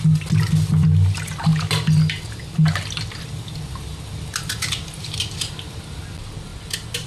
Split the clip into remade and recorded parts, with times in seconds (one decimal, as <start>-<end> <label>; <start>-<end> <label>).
0.0-7.1 recorded